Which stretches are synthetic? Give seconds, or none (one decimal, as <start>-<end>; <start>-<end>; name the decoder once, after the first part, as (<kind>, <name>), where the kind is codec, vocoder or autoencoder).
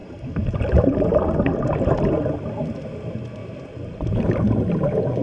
0.0-1.6 (vocoder, BigVGAN v2); 3.4-4.4